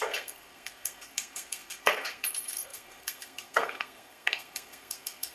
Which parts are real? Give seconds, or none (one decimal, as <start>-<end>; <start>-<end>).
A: none